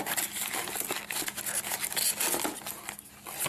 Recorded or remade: recorded